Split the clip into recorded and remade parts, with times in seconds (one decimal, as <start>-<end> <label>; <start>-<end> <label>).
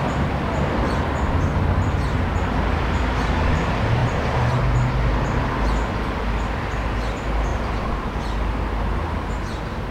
0.0-4.0 recorded; 4.0-4.5 remade; 4.5-7.5 recorded; 7.5-8.2 remade; 8.2-9.9 recorded